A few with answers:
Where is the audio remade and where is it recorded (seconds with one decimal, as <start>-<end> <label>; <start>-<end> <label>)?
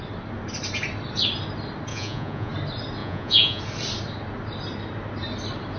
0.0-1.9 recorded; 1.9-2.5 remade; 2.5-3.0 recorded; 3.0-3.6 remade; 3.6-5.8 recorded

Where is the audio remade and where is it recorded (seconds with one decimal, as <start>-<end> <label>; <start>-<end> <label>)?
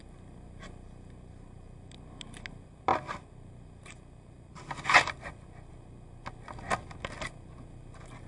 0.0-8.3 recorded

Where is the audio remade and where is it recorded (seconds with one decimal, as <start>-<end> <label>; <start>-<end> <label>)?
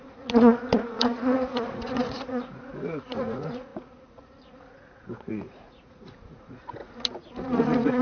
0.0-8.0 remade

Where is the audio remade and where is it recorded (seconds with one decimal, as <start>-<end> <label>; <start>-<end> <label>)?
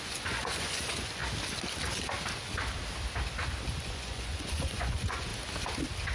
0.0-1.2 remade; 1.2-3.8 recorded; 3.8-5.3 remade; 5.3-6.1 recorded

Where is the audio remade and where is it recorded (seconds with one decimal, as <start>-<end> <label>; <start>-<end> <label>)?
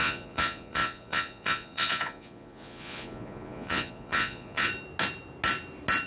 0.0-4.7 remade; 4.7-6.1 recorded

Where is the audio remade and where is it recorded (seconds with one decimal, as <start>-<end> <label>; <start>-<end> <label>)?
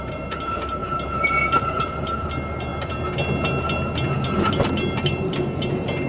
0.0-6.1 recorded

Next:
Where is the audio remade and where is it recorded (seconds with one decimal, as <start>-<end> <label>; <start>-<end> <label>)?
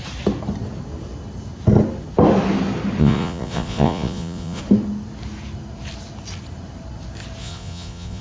0.0-3.0 recorded; 3.0-4.6 remade; 4.6-7.4 recorded; 7.4-8.2 remade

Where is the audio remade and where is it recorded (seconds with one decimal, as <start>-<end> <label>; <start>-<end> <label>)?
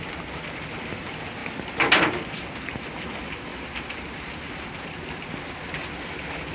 0.0-6.5 recorded